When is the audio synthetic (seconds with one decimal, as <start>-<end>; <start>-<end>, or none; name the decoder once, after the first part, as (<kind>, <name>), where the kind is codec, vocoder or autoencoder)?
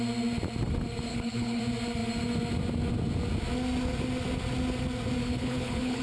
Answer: 1.1-1.6 (codec, HILCodec); 5.2-6.0